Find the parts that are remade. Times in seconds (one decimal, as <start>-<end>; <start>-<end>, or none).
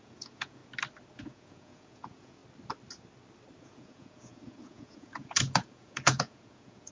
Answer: 0.0-0.6; 1.2-2.4; 3.6-6.9